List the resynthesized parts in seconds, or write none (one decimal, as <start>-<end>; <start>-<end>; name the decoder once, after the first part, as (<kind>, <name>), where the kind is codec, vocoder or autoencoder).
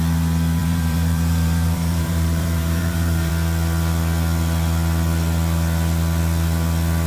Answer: 0.6-3.3 (vocoder, BigVGAN v2)